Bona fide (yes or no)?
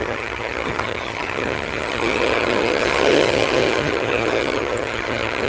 no